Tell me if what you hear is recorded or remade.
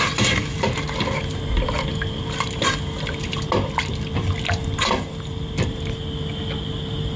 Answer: recorded